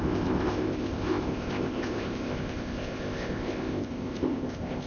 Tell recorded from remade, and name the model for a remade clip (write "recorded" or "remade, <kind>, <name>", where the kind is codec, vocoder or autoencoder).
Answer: remade, codec, ZipCodec